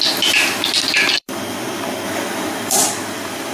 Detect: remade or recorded remade